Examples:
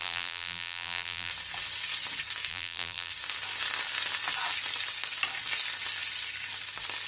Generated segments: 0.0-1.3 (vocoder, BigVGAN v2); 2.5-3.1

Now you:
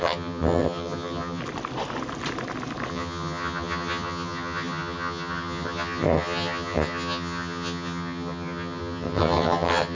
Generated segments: 0.0-1.4 (vocoder, HiFi-GAN); 2.9-9.9

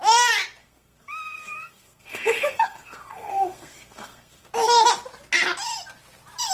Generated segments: 0.6-4.5 (codec, SNAC)